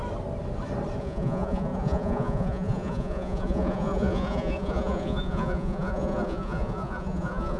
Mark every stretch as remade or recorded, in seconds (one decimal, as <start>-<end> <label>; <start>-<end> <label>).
0.0-1.0 recorded; 1.0-7.6 remade